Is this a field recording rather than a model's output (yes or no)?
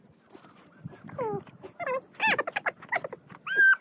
yes